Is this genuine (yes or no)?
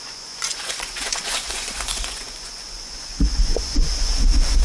no